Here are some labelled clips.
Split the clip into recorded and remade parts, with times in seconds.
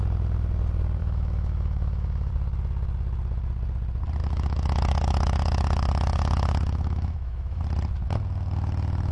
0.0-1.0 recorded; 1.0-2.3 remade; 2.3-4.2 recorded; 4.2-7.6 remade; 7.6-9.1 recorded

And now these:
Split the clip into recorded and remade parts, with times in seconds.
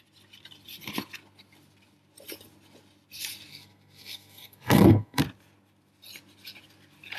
0.0-3.5 recorded; 3.5-5.2 remade; 5.2-7.2 recorded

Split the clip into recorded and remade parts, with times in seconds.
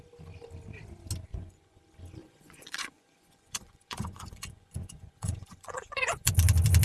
0.0-1.3 recorded; 1.3-1.8 remade; 1.8-2.2 recorded; 2.2-6.3 remade; 6.3-6.8 recorded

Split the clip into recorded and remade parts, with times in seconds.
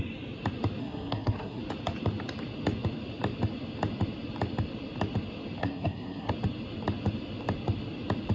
0.0-0.8 recorded; 0.8-1.6 remade; 1.6-5.6 recorded; 5.6-6.3 remade; 6.3-8.3 recorded